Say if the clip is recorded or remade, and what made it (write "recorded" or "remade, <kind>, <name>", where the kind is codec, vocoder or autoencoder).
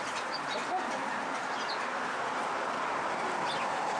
recorded